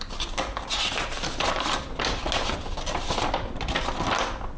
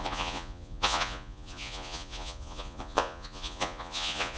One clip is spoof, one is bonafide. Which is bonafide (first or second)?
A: first